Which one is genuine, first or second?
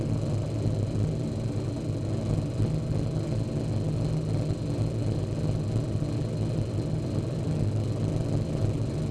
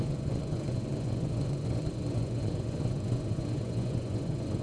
first